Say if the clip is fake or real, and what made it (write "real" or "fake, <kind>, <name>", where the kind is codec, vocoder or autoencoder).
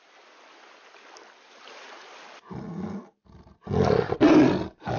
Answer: real